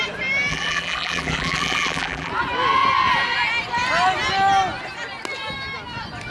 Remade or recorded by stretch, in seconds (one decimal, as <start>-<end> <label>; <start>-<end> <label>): 0.0-0.5 recorded; 0.5-2.3 remade; 2.3-6.3 recorded